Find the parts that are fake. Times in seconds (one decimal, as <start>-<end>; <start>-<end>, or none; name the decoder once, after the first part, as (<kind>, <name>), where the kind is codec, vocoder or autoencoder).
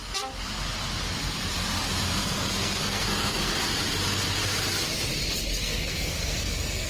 2.2-3.5 (codec, SNAC); 5.6-6.9